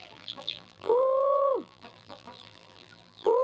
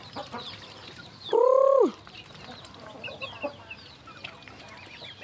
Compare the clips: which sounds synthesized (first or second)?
first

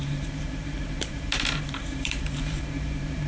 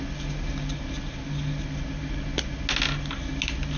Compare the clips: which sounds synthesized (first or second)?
first